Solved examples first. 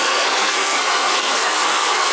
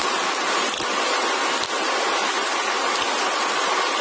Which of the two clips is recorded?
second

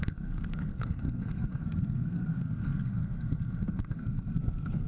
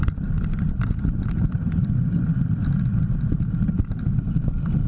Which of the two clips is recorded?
second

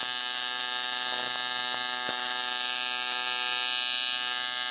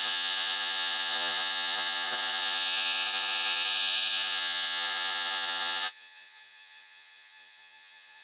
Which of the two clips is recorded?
first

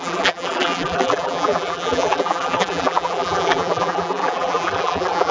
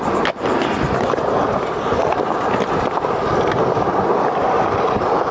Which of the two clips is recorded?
second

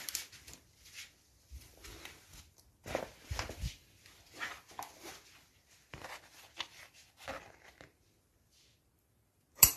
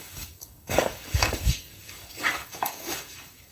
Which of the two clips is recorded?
first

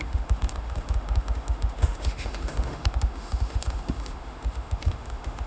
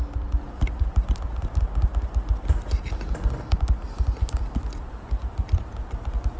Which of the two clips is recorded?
second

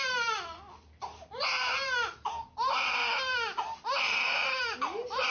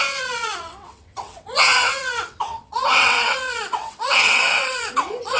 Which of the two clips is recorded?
first